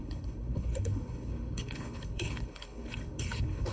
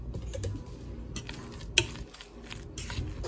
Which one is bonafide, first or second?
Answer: second